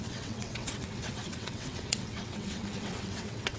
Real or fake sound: fake